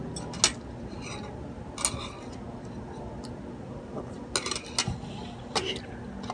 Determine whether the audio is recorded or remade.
recorded